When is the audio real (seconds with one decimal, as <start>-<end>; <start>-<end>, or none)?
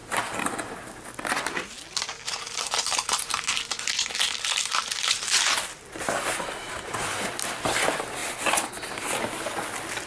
0.0-10.1